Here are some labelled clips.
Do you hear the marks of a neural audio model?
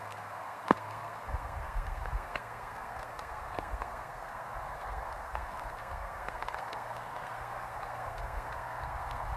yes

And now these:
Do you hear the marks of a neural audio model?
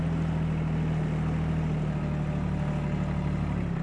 no